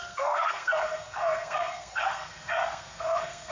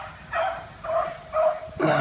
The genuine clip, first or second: second